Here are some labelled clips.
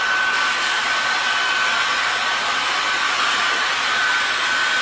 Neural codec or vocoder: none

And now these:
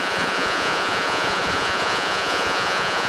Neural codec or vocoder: vocoder, Vocos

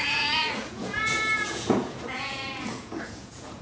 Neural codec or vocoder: vocoder, Vocos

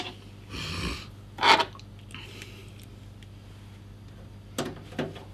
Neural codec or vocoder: none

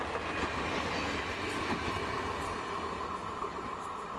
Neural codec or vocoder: none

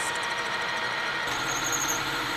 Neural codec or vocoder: vocoder, BigVGAN v2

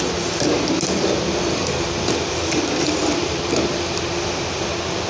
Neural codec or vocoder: none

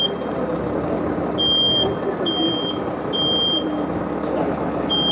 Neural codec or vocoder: none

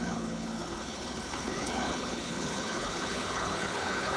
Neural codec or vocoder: codec, HILCodec